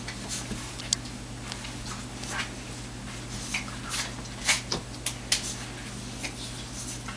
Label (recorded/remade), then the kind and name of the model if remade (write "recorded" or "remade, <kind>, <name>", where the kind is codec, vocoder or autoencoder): recorded